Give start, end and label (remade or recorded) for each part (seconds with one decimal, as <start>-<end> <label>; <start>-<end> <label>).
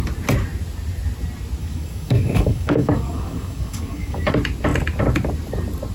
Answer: 0.0-1.6 recorded; 1.6-4.3 remade; 4.3-5.9 recorded